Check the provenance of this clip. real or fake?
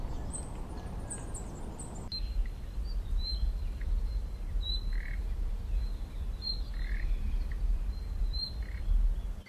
fake